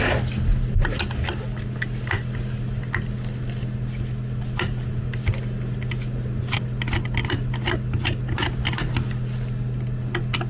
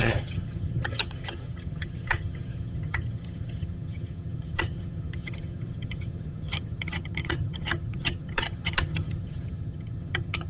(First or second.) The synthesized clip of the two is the second